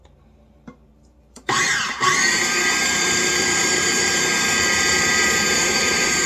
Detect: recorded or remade remade